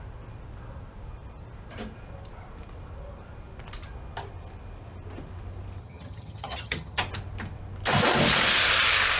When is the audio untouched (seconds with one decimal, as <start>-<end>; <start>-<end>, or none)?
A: 0.0-5.8; 7.0-9.2